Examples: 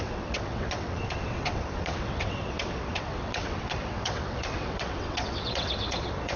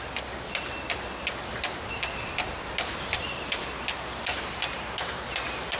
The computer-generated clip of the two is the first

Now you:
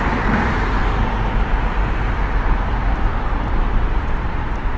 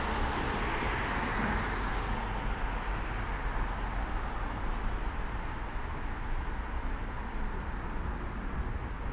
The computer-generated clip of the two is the first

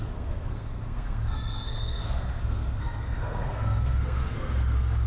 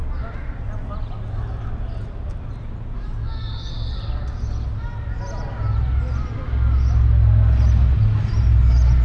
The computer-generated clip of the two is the first